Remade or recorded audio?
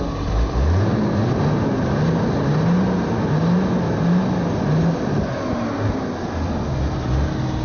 recorded